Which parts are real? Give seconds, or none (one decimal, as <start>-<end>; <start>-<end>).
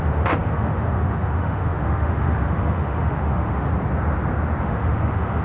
3.7-4.6